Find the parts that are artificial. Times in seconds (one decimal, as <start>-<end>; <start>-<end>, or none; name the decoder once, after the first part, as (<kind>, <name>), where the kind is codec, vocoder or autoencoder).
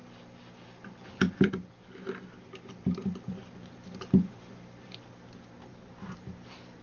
5.7-6.8 (vocoder, BigVGAN v2)